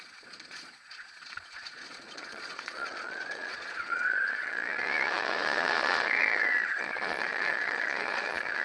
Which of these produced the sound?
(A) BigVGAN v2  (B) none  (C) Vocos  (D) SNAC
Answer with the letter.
C